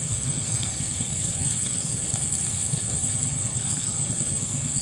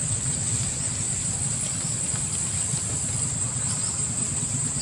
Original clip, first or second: second